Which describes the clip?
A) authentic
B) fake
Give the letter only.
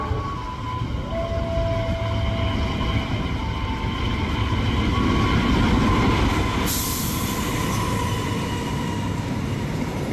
A